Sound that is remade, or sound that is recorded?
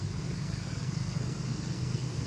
remade